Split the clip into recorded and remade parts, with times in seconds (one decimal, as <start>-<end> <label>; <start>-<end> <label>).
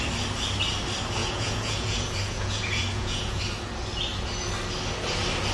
0.0-1.2 recorded; 1.2-3.4 remade; 3.4-5.5 recorded